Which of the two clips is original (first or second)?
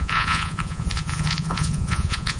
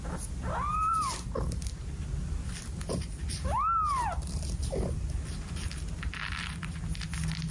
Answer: second